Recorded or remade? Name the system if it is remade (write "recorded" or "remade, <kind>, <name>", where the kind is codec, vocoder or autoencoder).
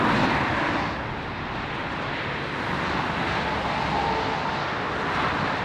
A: recorded